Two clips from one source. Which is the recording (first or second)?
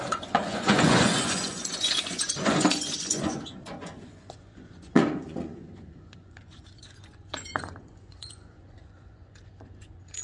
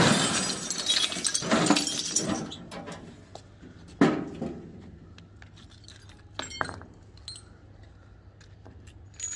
second